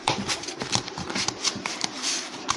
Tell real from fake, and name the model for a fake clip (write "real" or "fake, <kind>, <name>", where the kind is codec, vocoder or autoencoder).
fake, vocoder, BigVGAN v2